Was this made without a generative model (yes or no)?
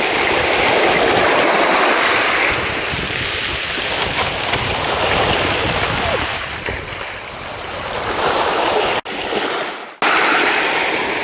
yes